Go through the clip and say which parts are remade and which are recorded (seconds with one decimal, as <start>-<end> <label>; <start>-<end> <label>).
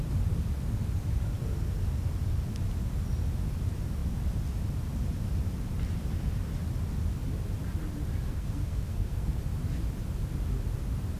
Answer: 0.0-8.3 recorded; 8.3-9.4 remade; 9.4-11.2 recorded